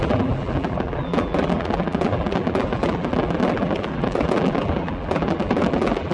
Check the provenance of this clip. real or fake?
fake